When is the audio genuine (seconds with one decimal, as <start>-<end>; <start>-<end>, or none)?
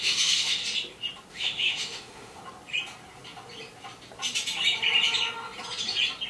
0.6-1.3; 2.4-6.3